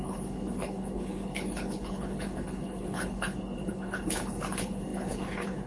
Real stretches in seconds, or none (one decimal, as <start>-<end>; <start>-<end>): none